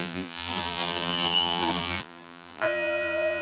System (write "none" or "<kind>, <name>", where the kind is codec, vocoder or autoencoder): vocoder, BigVGAN v2